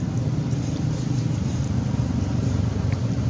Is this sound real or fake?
real